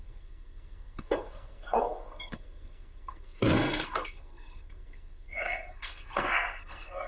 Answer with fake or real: fake